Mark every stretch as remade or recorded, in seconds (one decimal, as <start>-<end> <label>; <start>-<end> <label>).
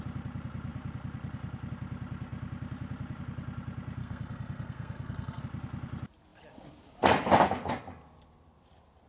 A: 0.0-4.0 recorded; 4.0-5.4 remade; 5.4-9.1 recorded